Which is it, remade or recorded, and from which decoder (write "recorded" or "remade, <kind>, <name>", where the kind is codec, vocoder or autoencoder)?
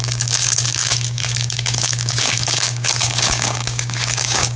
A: remade, codec, DAC